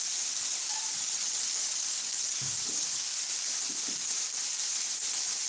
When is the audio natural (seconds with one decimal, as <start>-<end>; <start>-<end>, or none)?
0.0-1.5; 3.2-5.5